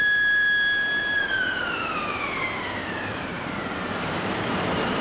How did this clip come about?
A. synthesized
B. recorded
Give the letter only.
A